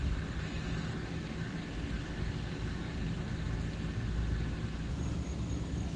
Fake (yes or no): no